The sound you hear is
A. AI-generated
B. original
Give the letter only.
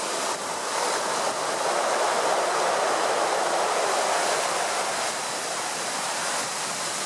A